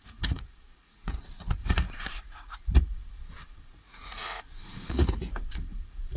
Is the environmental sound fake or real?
fake